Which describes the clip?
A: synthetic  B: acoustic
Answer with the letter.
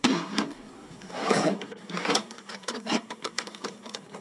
A